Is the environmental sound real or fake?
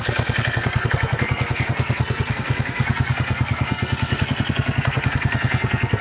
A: fake